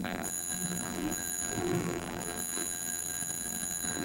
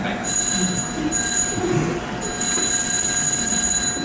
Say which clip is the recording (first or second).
second